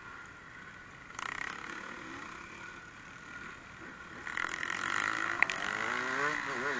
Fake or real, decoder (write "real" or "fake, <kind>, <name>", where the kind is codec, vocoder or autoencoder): real